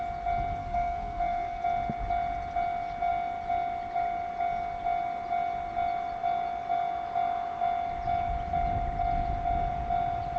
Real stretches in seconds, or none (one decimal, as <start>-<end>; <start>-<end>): 0.0-0.6; 1.6-10.4